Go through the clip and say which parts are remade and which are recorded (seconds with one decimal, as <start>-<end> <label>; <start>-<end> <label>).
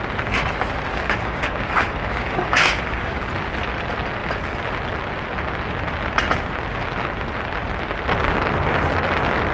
0.0-0.9 recorded; 0.9-3.3 remade; 3.3-9.5 recorded